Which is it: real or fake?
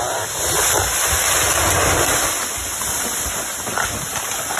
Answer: real